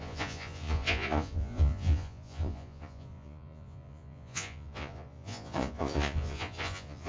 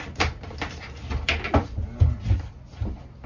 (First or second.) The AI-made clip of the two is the first